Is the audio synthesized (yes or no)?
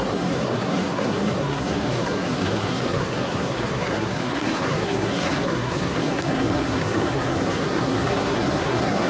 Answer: yes